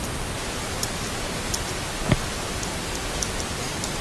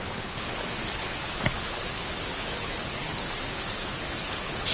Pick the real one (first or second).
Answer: first